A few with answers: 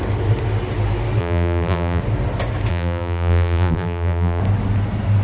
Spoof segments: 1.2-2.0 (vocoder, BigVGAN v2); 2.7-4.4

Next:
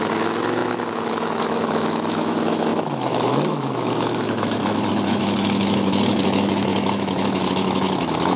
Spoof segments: 0.0-8.4 (autoencoder, DAC-VAE)

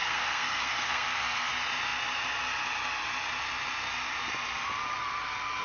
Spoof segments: 0.0-1.5 (codec, SNAC)

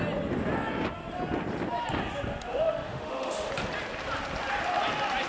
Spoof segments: 2.5-3.5 (autoencoder, DAC-VAE)

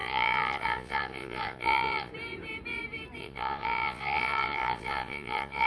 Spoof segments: 0.0-2.1 (vocoder, Vocos); 3.2-5.7